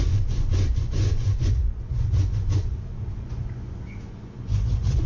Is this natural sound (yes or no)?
no